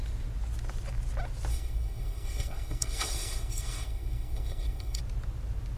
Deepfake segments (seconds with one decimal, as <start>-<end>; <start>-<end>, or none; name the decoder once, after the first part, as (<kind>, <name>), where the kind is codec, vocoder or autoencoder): 1.5-5.0 (codec, SNAC)